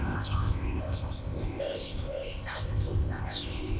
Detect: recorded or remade remade